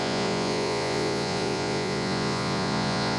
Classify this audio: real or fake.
fake